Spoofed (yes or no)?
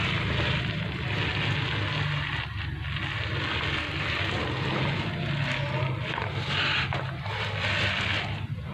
no